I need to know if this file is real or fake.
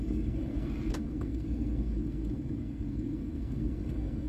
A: fake